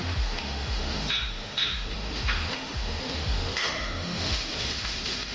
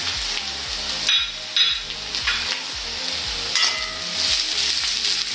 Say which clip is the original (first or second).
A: second